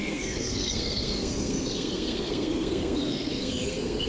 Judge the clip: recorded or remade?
remade